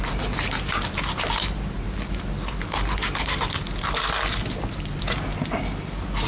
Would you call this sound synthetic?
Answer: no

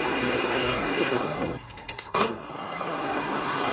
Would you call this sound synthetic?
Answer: yes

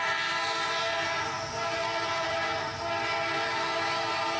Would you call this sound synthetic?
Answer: no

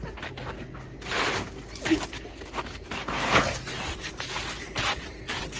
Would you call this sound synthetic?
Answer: no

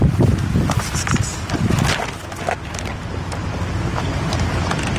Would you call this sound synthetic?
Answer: no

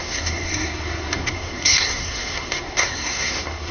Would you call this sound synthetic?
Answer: yes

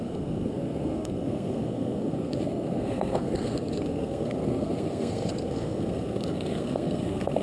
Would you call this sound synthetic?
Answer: yes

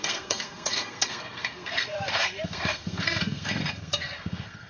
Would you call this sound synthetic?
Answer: yes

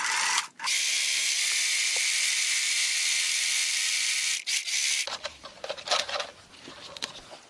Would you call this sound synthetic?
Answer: no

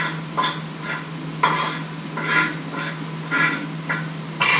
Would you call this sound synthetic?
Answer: no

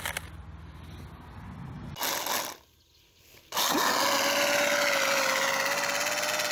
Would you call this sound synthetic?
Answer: no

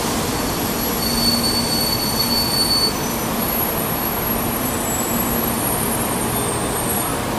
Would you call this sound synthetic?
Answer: no